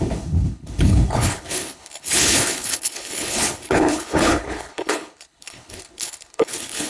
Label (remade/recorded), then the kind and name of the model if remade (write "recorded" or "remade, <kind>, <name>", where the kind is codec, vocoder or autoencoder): remade, codec, HILCodec